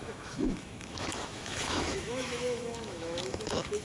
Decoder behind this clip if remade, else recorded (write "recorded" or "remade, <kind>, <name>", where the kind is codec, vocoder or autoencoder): remade, autoencoder, DAC-VAE